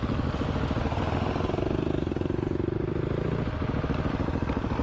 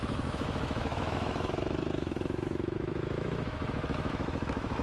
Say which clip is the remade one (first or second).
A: second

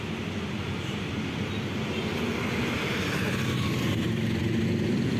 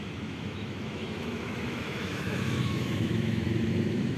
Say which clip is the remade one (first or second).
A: second